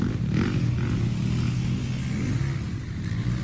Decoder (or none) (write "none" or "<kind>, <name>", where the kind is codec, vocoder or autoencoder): none